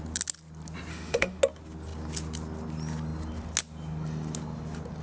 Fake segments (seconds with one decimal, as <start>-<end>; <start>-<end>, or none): 0.9-1.4